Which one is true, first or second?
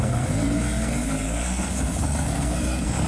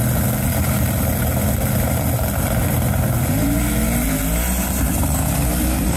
second